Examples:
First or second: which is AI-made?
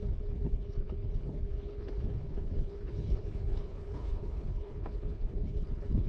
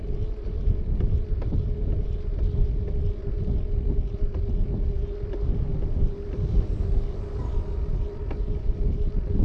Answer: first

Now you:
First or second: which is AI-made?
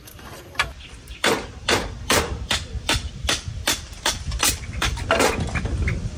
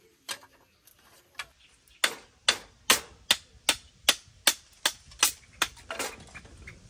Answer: first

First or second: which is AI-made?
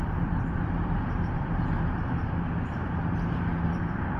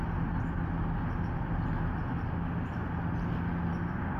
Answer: first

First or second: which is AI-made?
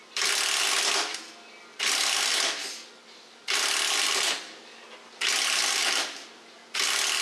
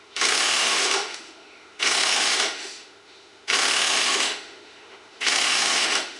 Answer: second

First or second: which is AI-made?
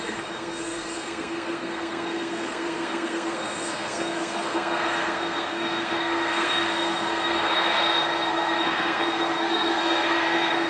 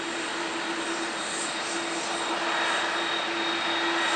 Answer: first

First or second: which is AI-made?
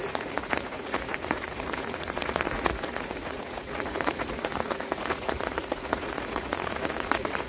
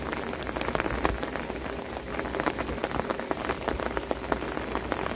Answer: first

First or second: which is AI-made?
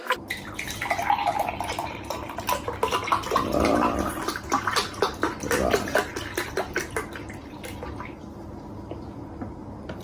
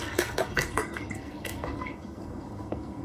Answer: second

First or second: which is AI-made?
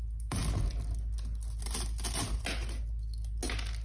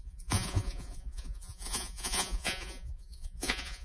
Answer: second